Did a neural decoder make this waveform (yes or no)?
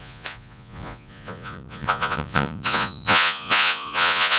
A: yes